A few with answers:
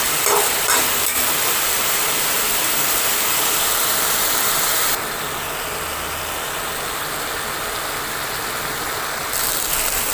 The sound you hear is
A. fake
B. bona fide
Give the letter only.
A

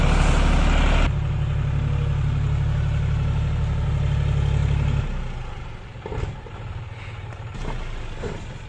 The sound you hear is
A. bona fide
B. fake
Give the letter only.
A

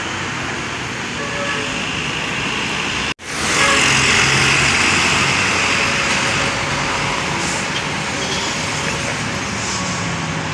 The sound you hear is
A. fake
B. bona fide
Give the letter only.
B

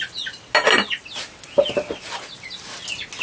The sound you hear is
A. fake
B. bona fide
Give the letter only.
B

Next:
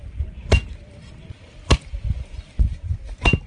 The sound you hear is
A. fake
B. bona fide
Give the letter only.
B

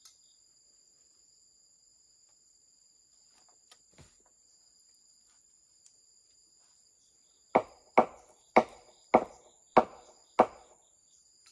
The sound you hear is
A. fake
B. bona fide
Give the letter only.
B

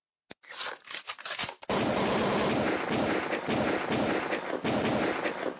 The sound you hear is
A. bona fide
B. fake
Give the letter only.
A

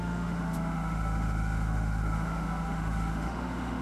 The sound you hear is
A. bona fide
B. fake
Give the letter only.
B